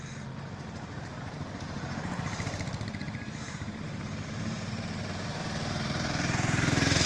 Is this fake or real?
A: fake